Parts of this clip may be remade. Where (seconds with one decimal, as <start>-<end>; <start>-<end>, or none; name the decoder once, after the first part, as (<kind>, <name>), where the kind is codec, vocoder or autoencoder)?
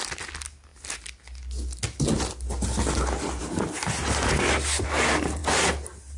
none